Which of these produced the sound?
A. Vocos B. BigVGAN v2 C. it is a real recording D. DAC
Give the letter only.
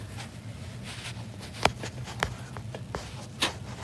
C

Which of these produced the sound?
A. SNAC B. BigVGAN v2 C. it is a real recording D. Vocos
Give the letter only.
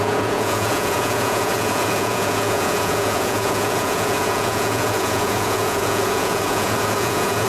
D